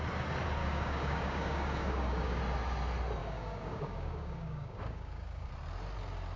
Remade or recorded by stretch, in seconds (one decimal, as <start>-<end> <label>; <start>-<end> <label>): 0.0-0.6 recorded; 0.6-2.4 remade; 2.4-3.2 recorded; 3.2-5.5 remade; 5.5-6.4 recorded